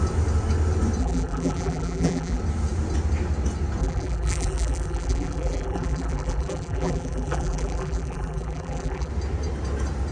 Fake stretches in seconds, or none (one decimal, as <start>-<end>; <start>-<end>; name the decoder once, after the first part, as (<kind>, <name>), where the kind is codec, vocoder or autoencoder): 1.0-2.4 (vocoder, BigVGAN v2); 3.8-9.1